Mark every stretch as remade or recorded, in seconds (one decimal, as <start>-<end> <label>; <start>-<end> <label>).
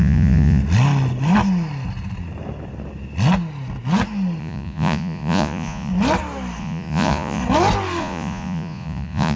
0.0-0.6 remade; 0.6-4.4 recorded; 4.4-5.9 remade; 5.9-6.6 recorded; 6.6-7.4 remade; 7.4-8.0 recorded; 8.0-9.4 remade